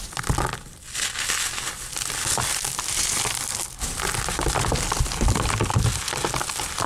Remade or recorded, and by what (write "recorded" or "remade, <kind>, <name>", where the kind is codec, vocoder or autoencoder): recorded